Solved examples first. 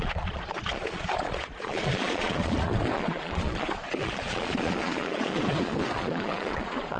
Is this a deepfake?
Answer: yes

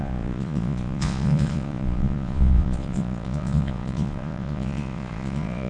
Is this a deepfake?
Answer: yes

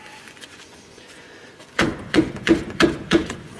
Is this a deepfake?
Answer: yes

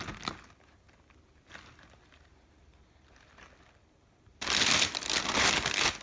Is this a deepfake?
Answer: no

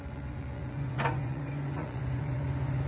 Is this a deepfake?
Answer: yes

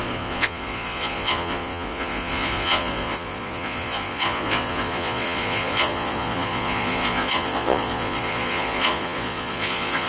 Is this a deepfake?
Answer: yes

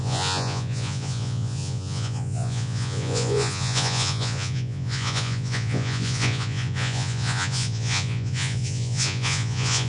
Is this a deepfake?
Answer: yes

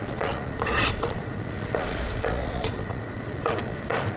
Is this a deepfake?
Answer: yes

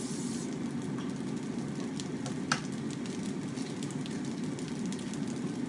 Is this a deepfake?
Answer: no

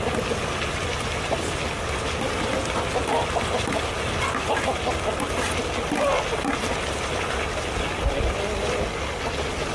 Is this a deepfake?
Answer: no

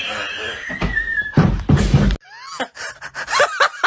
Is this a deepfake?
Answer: no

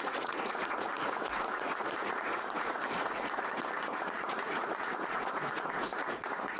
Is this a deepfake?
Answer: yes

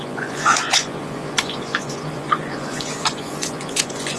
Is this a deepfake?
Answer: yes